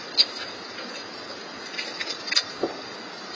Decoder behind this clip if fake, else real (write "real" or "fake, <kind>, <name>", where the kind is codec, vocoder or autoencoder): real